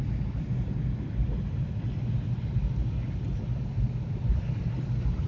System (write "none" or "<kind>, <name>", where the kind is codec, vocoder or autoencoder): none